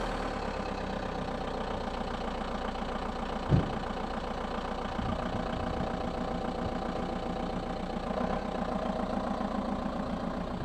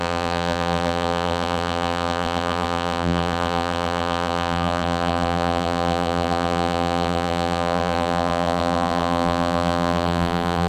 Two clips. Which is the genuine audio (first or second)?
first